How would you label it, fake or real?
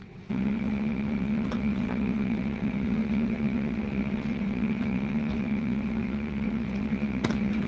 fake